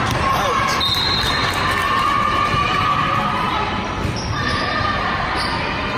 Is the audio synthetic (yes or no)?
yes